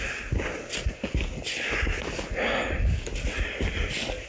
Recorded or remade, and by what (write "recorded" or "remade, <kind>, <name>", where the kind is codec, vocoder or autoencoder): recorded